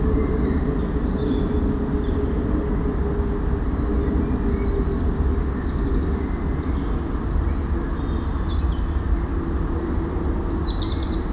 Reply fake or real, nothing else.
real